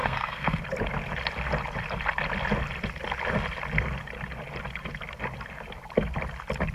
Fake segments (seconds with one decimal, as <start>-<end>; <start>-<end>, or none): 0.0-0.6